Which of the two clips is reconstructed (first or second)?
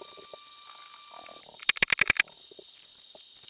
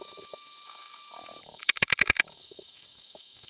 second